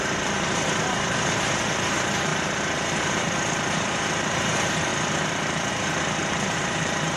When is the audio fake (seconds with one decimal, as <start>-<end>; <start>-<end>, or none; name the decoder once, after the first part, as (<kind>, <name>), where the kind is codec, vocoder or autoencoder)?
0.0-2.3 (vocoder, BigVGAN v2); 2.9-4.9; 5.7-7.2